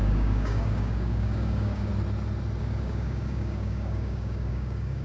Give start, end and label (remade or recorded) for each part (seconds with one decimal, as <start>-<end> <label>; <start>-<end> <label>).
0.0-1.9 remade; 1.9-2.6 recorded; 2.6-5.0 remade